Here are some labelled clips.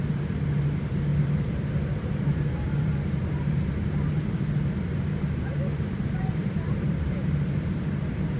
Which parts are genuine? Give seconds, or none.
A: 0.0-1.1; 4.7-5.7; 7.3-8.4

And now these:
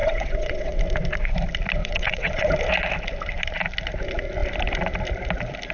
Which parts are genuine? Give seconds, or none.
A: 0.8-1.8; 2.5-5.7

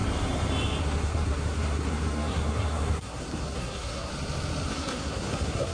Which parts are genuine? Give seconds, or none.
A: 0.0-0.8; 4.1-4.7

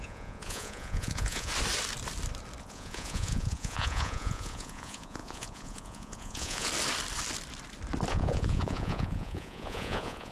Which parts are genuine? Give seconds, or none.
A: 1.5-2.6; 6.7-8.1

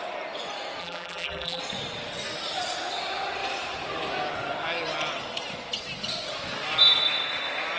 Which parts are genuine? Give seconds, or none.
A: 0.0-0.8; 1.6-7.8

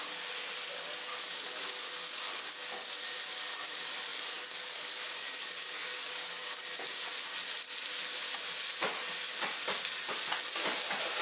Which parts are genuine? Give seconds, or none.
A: 0.0-1.1; 2.4-4.1; 6.6-11.2

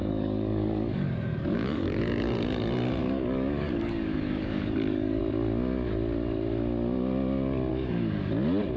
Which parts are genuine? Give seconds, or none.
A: 2.0-3.0; 5.2-7.7; 8.3-8.8

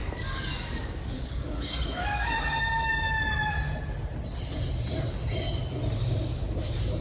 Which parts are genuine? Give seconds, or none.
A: 2.3-7.0